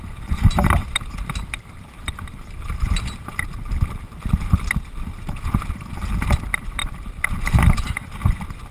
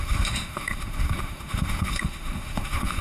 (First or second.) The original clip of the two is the first